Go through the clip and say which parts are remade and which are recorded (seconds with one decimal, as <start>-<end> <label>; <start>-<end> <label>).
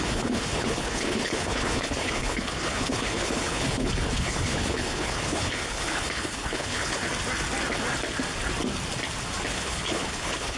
0.0-7.0 remade; 7.0-9.5 recorded; 9.5-10.6 remade